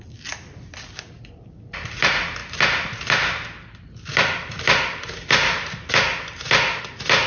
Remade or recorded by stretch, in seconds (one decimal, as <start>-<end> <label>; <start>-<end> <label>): 0.0-7.3 recorded